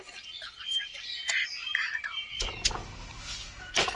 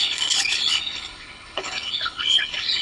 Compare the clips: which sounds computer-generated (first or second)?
second